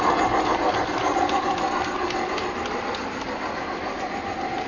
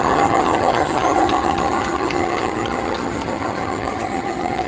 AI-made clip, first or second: second